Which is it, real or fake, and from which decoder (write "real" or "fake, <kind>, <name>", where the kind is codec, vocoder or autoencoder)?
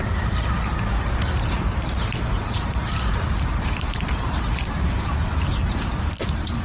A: fake, vocoder, BigVGAN v2